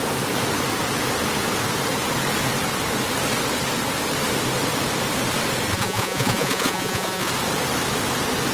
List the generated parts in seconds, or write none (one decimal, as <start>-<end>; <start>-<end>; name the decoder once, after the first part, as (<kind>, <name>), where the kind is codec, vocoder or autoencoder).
5.7-7.3 (vocoder, Vocos)